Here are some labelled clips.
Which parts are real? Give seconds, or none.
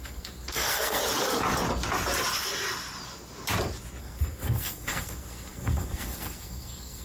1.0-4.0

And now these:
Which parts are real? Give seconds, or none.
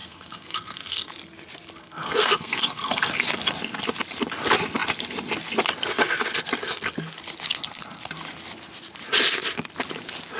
1.1-1.8; 3.1-10.4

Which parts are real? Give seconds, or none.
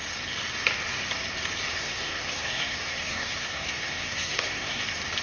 0.0-1.7; 4.8-5.2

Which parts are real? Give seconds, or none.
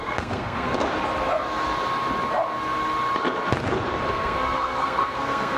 0.7-4.1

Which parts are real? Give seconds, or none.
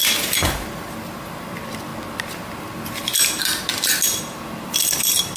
0.0-5.4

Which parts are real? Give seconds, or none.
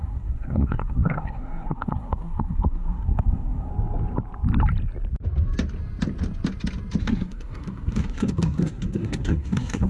3.7-7.0